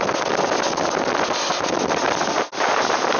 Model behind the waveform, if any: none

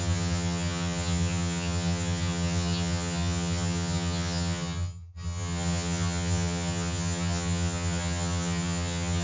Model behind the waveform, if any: vocoder, HiFi-GAN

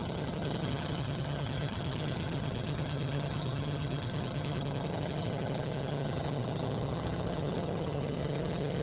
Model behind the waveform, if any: vocoder, HiFi-GAN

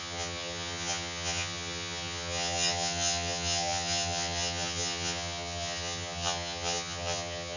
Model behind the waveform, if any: vocoder, HiFi-GAN